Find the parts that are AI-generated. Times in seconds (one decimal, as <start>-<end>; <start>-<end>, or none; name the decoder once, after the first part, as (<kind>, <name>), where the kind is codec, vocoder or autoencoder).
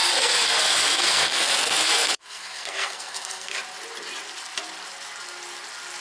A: 0.0-3.6 (codec, SNAC)